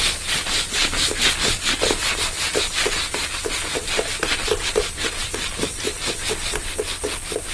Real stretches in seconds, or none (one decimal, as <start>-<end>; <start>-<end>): 0.0-7.5